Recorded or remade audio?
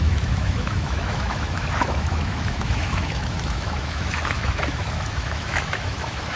remade